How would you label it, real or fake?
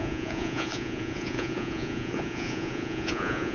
fake